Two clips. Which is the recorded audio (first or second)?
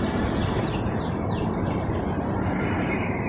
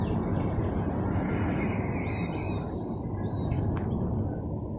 second